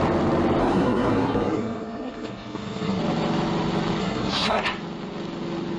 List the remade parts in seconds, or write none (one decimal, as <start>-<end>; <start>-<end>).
0.6-3.0; 4.0-4.6